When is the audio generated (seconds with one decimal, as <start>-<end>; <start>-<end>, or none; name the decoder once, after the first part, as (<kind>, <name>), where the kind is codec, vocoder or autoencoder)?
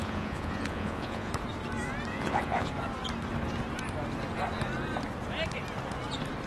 0.0-1.3 (vocoder, Vocos); 2.1-2.7